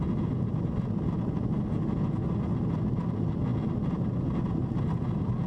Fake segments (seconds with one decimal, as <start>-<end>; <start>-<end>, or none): none

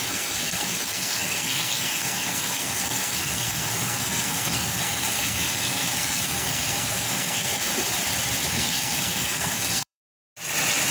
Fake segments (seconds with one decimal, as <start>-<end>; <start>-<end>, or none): 0.0-7.7; 8.5-10.0

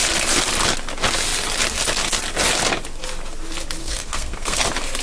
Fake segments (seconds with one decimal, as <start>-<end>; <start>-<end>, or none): 3.8-4.6

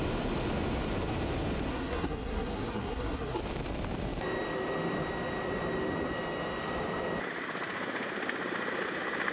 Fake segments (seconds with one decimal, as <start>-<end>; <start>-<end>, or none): 1.7-3.4

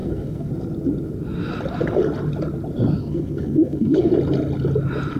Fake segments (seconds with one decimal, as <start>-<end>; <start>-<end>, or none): 0.0-0.5; 3.0-4.1

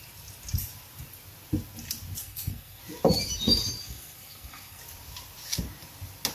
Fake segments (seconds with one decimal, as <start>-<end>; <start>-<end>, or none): 2.2-2.8; 3.8-4.8